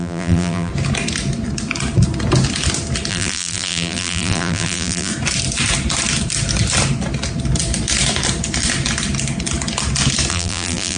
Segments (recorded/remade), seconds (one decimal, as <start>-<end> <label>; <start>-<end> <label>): 0.0-0.7 remade; 0.7-3.1 recorded; 3.1-5.1 remade; 5.1-10.3 recorded; 10.3-11.0 remade